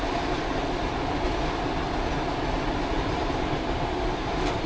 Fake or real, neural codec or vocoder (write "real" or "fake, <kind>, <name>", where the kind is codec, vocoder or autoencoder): real